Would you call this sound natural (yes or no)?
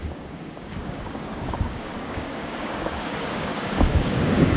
no